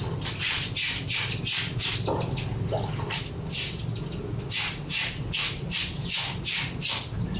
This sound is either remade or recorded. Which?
recorded